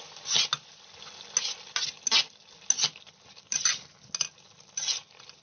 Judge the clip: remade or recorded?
recorded